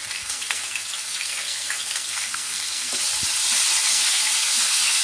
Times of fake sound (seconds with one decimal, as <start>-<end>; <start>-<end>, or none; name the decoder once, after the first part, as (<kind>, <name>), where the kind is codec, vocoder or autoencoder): 0.0-3.0 (codec, SNAC); 3.9-5.0